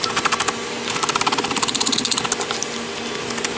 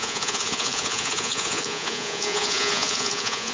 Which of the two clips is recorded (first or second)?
first